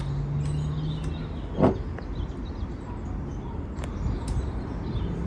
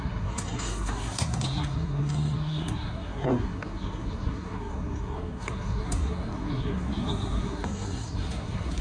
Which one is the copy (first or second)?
second